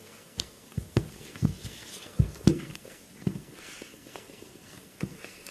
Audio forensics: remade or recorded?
remade